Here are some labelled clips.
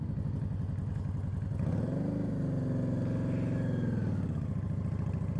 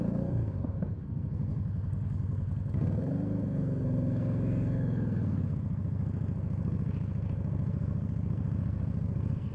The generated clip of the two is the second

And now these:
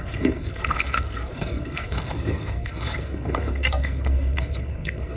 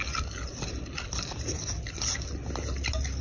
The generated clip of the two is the first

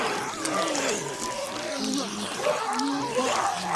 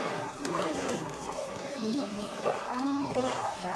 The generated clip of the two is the second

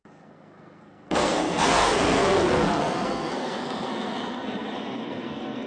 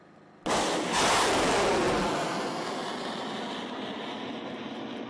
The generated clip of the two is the first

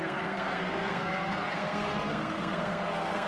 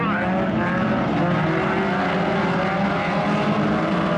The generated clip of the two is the first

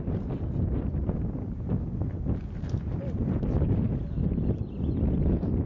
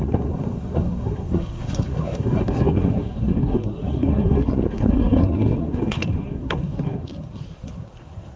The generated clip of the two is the second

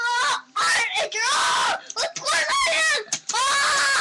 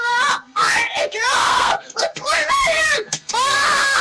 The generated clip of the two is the second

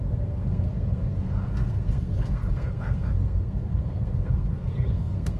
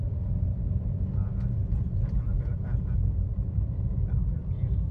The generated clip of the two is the first